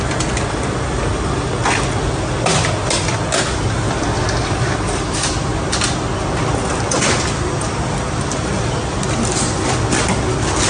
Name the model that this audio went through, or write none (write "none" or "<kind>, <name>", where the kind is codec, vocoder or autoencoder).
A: none